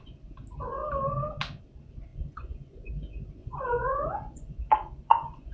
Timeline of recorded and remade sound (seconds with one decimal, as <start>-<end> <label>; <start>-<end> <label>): 0.0-2.1 recorded; 2.1-2.9 remade; 2.9-3.4 recorded; 3.4-5.5 remade